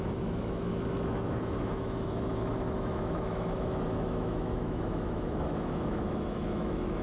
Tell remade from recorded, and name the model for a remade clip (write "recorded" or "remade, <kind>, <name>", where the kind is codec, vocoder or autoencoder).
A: remade, autoencoder, DAC-VAE